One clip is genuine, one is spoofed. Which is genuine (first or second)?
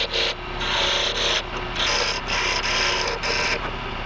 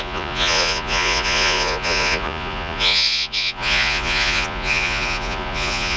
first